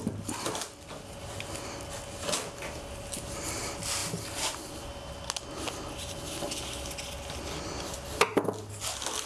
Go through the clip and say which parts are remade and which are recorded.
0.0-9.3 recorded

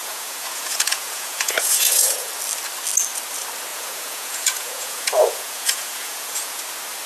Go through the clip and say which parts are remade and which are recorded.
0.0-2.3 remade; 2.3-3.7 recorded; 3.7-6.6 remade; 6.6-7.1 recorded

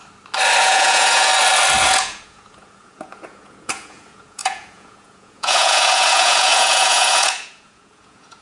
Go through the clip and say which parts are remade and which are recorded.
0.0-0.6 recorded; 0.6-1.3 remade; 1.3-1.8 recorded; 1.8-8.4 remade

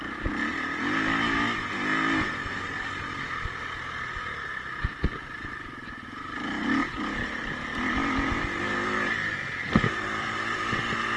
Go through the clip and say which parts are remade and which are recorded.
0.0-11.2 recorded

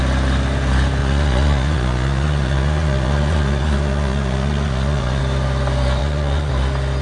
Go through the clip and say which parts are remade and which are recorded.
0.0-1.0 recorded; 1.0-5.2 remade; 5.2-6.0 recorded; 6.0-6.5 remade; 6.5-7.0 recorded

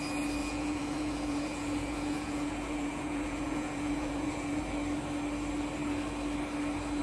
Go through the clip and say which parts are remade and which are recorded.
0.0-0.4 recorded; 0.4-4.6 remade; 4.6-7.0 recorded